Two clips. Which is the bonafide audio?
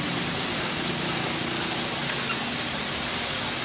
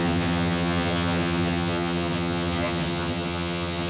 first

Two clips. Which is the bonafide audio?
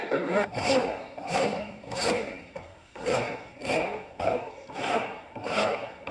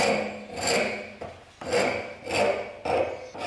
second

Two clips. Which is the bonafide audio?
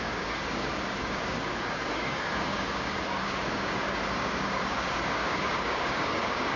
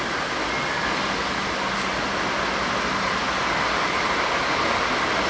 second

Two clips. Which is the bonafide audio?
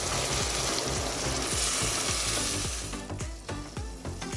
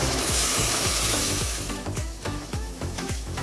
first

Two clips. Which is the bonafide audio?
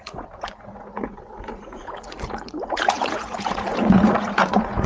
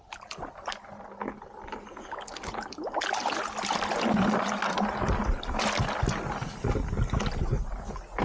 second